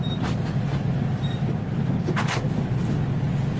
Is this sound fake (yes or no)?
no